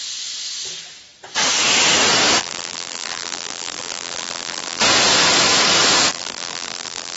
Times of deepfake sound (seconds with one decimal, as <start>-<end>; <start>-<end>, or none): 2.4-4.8; 6.1-7.2